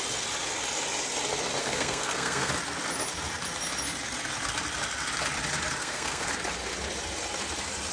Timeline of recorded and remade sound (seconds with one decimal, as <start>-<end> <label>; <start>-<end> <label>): 0.0-1.6 recorded; 1.6-2.5 remade; 2.5-5.8 recorded; 5.8-6.3 remade; 6.3-7.9 recorded